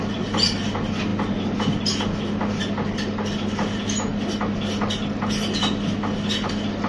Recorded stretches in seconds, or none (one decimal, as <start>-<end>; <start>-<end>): 0.0-6.9